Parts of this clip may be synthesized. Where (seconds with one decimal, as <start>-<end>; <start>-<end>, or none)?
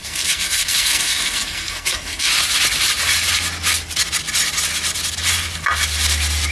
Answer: 0.0-2.3